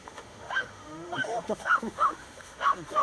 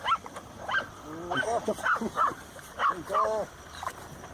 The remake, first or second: first